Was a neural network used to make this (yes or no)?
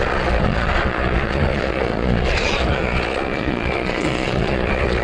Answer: yes